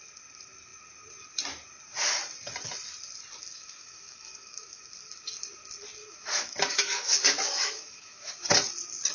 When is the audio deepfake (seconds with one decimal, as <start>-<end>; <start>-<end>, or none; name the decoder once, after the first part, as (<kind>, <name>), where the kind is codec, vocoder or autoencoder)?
3.5-4.8 (autoencoder, DAC-VAE); 6.0-8.3

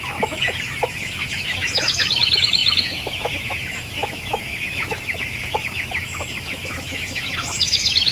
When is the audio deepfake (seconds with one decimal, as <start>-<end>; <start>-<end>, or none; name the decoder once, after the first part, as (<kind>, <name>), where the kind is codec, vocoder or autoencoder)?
0.0-8.1 (autoencoder, DAC-VAE)

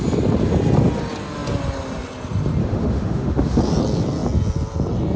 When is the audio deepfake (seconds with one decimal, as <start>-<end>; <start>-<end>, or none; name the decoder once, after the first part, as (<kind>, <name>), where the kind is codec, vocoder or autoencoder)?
2.6-3.6 (autoencoder, DAC-VAE)

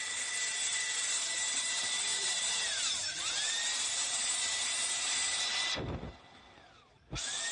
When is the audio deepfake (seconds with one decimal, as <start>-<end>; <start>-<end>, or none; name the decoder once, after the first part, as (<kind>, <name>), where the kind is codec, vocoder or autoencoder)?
none

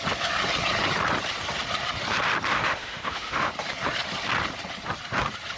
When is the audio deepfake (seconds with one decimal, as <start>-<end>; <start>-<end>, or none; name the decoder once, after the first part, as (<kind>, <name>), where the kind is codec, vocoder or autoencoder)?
2.5-3.5 (autoencoder, DAC-VAE)

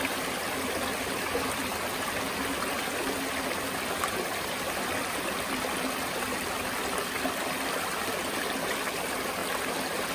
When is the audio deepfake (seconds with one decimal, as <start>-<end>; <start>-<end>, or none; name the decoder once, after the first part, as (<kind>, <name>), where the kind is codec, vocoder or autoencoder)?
none